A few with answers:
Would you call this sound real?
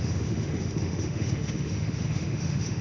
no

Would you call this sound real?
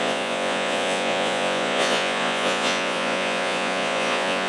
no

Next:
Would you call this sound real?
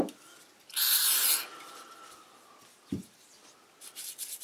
yes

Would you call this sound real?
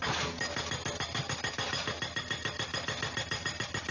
yes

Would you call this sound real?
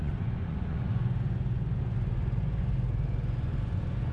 no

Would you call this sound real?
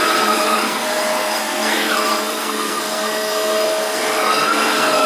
no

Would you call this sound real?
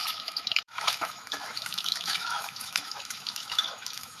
no